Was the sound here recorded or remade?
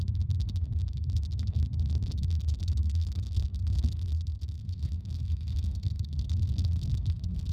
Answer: remade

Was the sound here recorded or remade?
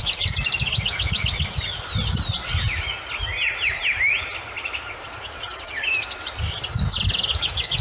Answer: recorded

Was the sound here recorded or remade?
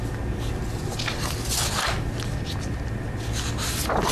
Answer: recorded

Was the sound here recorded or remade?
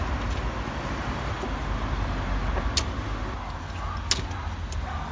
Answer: recorded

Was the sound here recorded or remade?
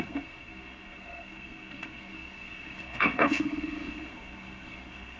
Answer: remade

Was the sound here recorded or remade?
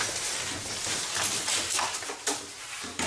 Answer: recorded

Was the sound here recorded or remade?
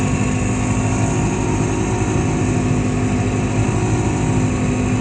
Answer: recorded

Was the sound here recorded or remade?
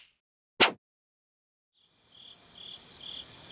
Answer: recorded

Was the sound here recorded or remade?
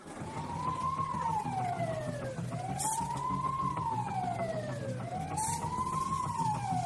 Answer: recorded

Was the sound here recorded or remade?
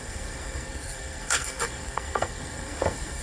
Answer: remade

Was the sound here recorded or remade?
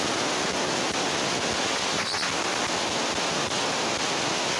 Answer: recorded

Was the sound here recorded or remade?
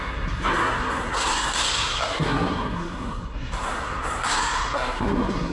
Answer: remade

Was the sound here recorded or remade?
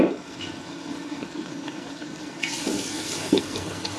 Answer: remade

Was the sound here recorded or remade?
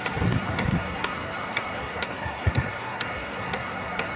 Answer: remade